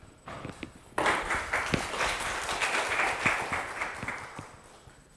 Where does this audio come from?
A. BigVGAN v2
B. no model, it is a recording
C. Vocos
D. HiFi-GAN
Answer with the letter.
B